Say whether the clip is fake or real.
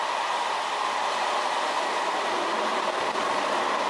fake